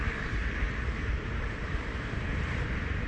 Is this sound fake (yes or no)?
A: yes